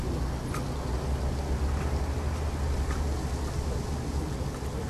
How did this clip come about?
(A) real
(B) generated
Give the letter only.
A